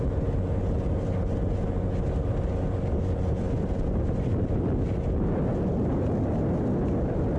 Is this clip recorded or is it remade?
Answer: recorded